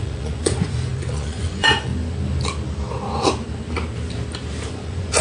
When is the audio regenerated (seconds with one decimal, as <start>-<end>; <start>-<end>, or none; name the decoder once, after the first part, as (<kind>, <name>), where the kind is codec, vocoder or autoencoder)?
0.0-1.9 (vocoder, Vocos); 4.7-5.2